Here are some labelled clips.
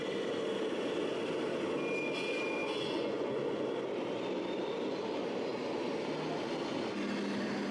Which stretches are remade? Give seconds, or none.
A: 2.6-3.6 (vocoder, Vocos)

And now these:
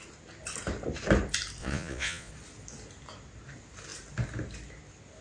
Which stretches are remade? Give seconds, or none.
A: 1.6-2.3 (vocoder, Vocos)

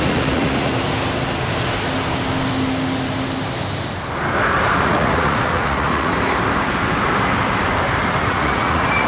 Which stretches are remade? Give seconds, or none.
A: 0.0-0.7 (vocoder, Vocos); 4.8-6.1; 8.2-9.1